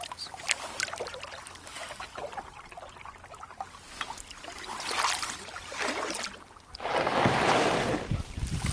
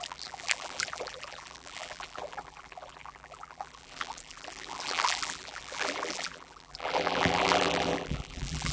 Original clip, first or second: first